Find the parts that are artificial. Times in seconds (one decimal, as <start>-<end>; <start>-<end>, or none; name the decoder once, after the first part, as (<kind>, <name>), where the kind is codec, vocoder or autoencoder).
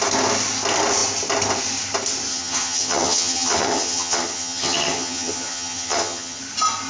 2.3-6.4 (vocoder, HiFi-GAN)